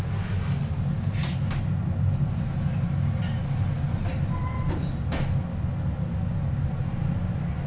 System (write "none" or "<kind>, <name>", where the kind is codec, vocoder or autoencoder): none